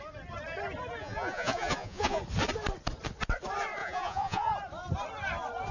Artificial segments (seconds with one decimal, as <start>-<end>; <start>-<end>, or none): 1.0-2.2; 3.8-4.5